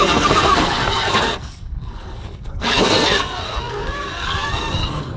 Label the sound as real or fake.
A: fake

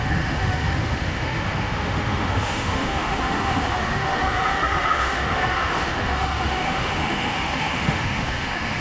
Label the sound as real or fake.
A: fake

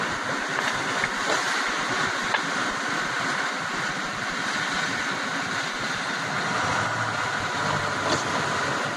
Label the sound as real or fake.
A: real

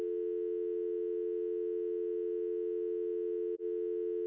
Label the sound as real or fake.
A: real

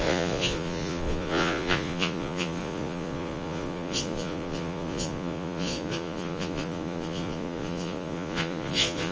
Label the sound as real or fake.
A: fake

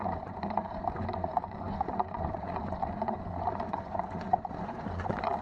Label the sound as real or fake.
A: fake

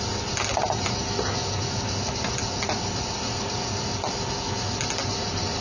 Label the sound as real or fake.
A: real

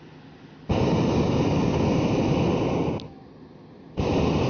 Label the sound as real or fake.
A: real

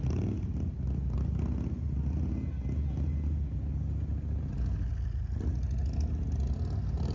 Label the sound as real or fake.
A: real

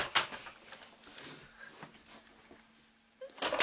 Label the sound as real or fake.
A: real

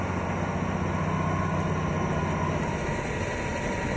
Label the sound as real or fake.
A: real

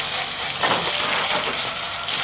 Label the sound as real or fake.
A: real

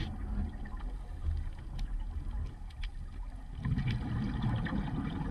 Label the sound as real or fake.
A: real